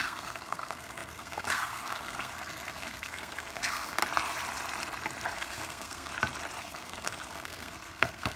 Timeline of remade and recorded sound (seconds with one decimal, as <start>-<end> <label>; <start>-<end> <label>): 0.0-4.0 remade; 4.0-5.3 recorded; 5.3-6.1 remade; 6.1-6.6 recorded; 6.6-8.4 remade